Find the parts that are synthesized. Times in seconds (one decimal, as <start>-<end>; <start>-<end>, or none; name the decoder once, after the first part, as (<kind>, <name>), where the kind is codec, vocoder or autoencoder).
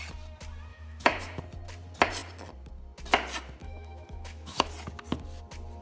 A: 0.7-1.4 (autoencoder, DAC-VAE); 3.6-4.7